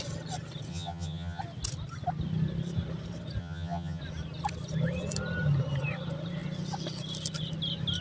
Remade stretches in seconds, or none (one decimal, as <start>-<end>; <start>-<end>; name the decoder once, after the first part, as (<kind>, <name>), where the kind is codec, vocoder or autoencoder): 0.7-1.4 (vocoder, HiFi-GAN); 3.4-4.0